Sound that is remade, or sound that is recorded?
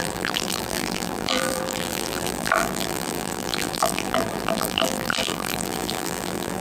remade